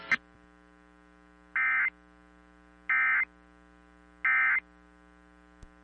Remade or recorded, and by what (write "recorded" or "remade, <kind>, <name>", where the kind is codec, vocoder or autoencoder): recorded